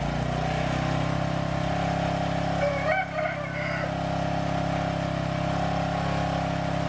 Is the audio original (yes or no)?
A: yes